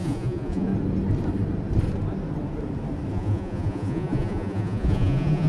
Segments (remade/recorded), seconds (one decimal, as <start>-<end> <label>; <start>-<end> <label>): 0.0-0.7 remade; 0.7-3.1 recorded; 3.1-5.5 remade